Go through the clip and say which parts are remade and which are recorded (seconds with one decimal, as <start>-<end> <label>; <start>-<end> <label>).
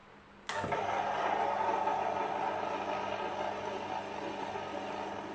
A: 0.0-5.3 recorded